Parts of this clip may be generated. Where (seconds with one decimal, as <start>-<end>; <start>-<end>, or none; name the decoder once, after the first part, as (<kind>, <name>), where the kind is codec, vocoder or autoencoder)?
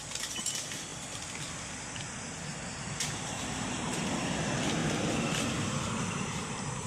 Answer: 2.7-4.0 (vocoder, BigVGAN v2)